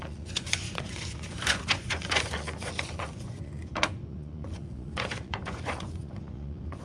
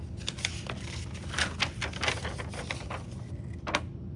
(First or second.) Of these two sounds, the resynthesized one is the first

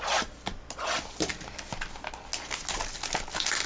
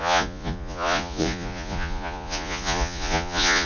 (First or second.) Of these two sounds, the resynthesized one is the second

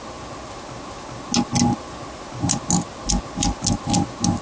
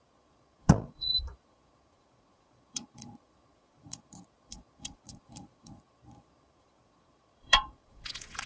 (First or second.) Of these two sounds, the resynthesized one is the second